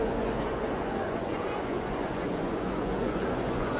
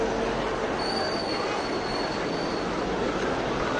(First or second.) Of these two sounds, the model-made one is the first